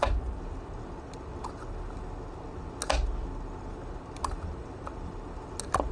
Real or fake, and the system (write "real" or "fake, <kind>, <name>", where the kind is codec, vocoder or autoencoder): real